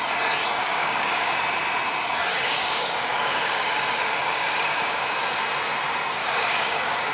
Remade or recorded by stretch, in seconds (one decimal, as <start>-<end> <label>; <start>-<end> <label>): 0.0-0.6 recorded; 0.6-1.4 remade; 1.4-2.3 recorded; 2.3-5.0 remade; 5.0-6.2 recorded; 6.2-7.1 remade